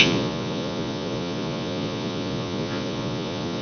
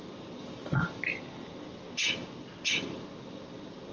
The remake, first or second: first